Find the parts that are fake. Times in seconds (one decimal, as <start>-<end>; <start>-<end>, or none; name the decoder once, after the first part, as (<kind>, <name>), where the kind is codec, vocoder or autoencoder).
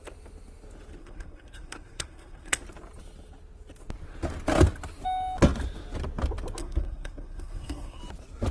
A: 1.0-2.6 (codec, SNAC); 6.6-8.0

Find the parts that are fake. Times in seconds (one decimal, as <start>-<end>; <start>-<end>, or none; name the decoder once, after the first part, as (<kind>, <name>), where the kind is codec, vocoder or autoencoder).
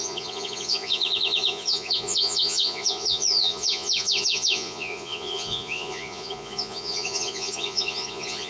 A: 0.0-8.5 (vocoder, Vocos)